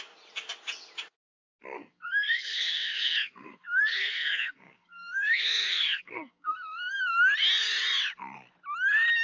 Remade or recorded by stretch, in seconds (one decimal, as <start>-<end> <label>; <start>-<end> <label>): 0.0-1.8 recorded; 1.8-7.1 remade; 7.1-9.2 recorded